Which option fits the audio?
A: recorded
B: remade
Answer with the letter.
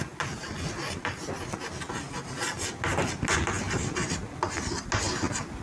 A